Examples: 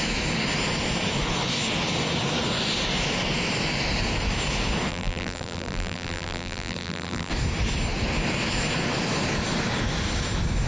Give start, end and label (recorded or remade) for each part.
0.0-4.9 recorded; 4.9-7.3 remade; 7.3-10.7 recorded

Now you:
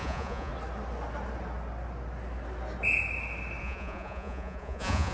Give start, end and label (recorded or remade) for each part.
0.0-0.5 remade; 0.5-3.6 recorded; 3.6-5.1 remade

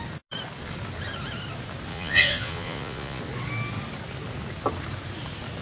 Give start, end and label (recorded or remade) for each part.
0.0-1.9 recorded; 1.9-3.2 remade; 3.2-5.6 recorded

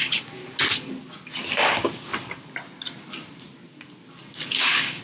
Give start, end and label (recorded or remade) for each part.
0.0-0.4 remade; 0.4-1.5 recorded; 1.5-2.1 remade; 2.1-4.3 recorded; 4.3-5.0 remade